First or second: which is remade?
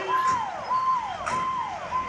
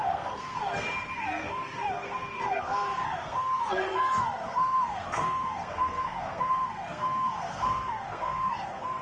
second